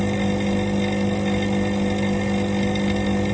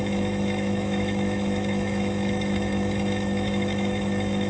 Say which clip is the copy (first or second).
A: second